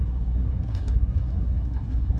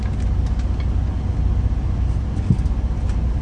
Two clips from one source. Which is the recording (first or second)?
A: second